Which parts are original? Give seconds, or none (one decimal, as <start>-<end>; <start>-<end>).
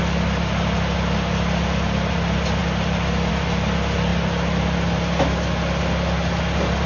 0.0-6.9